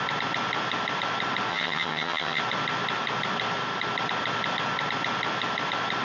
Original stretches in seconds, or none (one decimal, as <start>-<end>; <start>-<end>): 0.0-1.5; 2.4-6.0